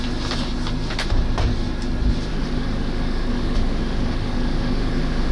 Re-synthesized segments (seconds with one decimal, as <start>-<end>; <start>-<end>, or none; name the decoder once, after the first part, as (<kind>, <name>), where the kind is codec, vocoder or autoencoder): 2.3-5.3 (autoencoder, DAC-VAE)